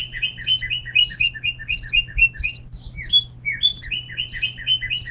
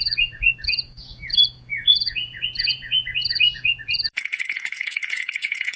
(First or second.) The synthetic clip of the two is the second